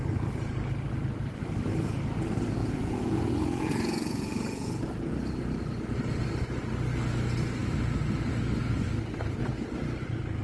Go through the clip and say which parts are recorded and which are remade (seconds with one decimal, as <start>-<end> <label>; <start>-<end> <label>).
0.0-2.6 recorded; 2.6-5.3 remade; 5.3-10.4 recorded